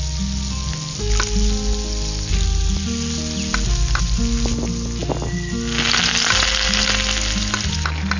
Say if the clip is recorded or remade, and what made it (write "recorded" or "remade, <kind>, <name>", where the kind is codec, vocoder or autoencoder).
recorded